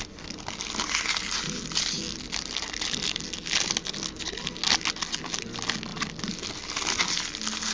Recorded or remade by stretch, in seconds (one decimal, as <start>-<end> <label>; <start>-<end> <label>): 0.0-7.7 recorded